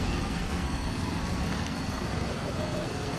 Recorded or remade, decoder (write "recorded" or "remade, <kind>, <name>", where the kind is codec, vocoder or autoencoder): remade, codec, SNAC